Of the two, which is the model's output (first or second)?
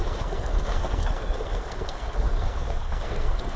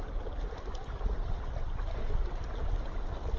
first